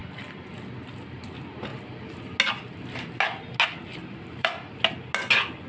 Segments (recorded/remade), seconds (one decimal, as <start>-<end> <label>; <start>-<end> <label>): 0.0-3.9 recorded; 3.9-4.8 remade; 4.8-5.7 recorded

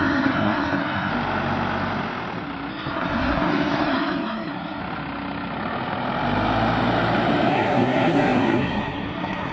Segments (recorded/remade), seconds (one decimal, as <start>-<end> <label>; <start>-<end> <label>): 0.0-1.1 remade; 1.1-2.7 recorded; 2.7-4.8 remade; 4.8-7.5 recorded; 7.5-9.5 remade

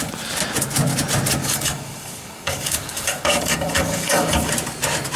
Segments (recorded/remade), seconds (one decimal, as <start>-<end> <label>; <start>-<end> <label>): 0.0-1.4 recorded; 1.4-4.5 remade; 4.5-5.2 recorded